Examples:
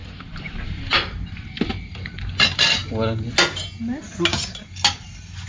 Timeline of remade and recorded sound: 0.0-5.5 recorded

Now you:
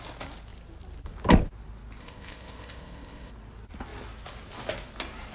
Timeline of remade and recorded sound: 0.0-2.0 recorded; 2.0-3.3 remade; 3.3-5.3 recorded

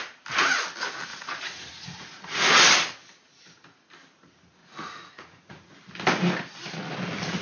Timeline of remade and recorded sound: 0.0-1.1 recorded; 1.1-2.5 remade; 2.5-4.6 recorded; 4.6-5.8 remade; 5.8-7.4 recorded

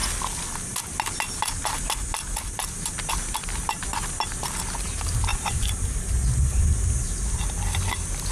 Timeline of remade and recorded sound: 0.0-5.3 recorded; 5.3-6.6 remade; 6.6-8.3 recorded